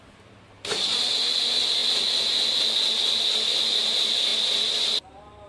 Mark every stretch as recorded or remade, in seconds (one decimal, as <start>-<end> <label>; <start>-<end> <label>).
0.0-4.3 recorded; 4.3-5.5 remade